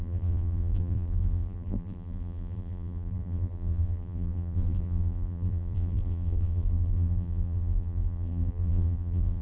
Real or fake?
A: fake